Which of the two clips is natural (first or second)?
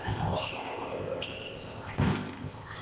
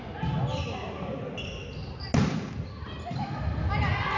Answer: second